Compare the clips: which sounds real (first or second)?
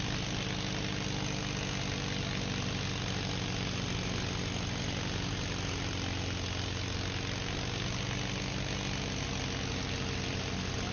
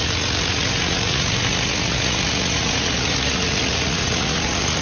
first